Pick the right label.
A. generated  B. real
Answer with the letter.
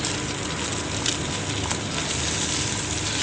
B